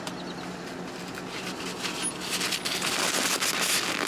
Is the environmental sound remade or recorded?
recorded